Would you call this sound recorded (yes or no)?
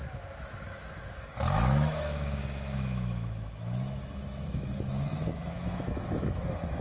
no